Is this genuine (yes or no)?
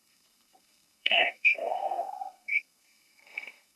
no